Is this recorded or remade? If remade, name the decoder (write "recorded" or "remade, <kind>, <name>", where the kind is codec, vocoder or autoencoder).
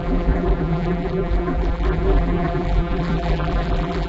remade, vocoder, BigVGAN v2